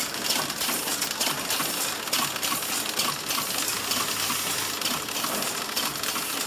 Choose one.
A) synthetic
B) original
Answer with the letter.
B